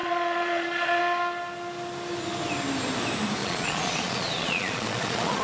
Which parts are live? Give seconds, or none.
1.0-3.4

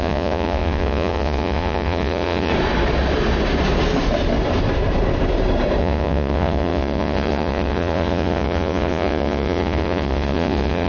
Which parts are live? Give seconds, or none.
2.5-5.8

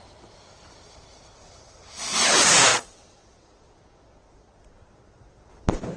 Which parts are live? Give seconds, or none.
0.0-2.7; 5.5-6.0

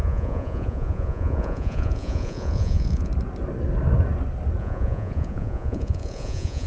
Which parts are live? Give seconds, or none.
3.1-4.6

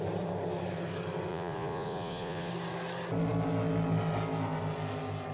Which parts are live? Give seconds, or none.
0.0-1.3; 2.5-5.3

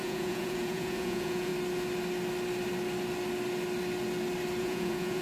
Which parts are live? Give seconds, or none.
1.5-4.6